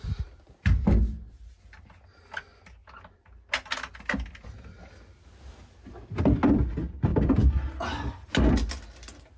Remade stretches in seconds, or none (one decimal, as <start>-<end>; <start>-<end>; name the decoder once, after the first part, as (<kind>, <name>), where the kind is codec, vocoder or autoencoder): none